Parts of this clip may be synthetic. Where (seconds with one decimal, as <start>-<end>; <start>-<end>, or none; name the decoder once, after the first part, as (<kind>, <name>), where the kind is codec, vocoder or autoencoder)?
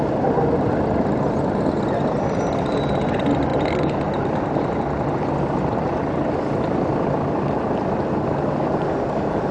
none